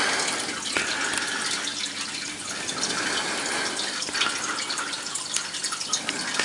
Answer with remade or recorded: recorded